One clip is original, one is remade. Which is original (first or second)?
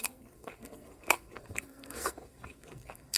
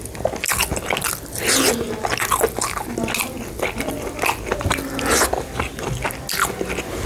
second